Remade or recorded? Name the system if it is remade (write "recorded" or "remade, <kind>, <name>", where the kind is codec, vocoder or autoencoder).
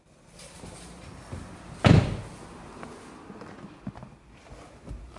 recorded